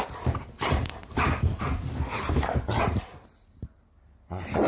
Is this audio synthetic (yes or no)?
yes